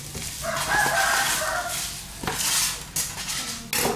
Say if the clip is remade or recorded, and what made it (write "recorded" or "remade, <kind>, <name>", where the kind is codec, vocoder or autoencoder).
recorded